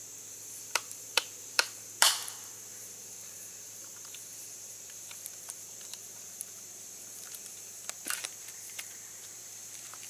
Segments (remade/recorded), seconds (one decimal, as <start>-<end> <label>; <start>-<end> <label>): 0.0-0.5 recorded; 0.5-10.1 remade